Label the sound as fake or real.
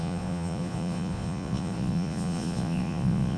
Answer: fake